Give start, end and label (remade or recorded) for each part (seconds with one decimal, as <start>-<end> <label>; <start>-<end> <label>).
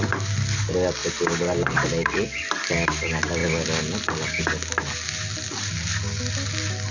0.0-1.0 recorded; 1.0-1.9 remade; 1.9-6.9 recorded